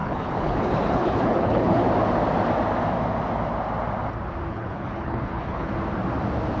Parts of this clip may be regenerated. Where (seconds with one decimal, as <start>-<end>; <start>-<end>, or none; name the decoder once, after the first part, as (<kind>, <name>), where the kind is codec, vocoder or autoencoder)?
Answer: 0.0-1.8 (codec, HILCodec); 4.5-5.7